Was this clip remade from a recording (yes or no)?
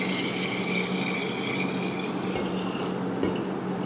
no